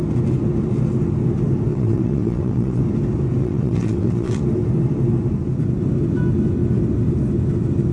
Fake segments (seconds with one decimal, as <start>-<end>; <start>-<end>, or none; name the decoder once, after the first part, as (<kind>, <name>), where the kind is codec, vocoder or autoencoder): 1.7-2.8 (vocoder, WaveNeXt); 3.4-4.4